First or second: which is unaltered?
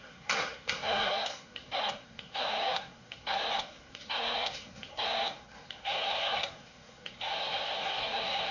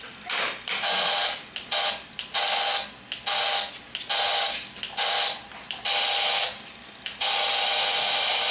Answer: second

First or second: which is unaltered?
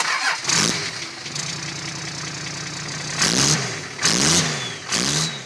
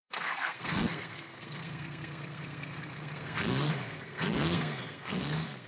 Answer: first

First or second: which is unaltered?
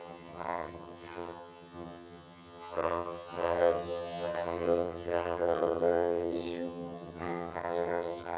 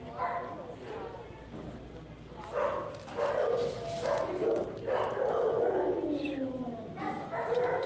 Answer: second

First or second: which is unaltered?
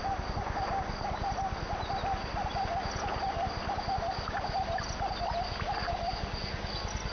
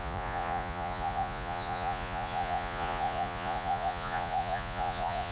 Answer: first